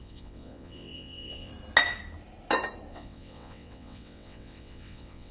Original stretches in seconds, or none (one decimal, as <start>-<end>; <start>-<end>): 1.5-2.9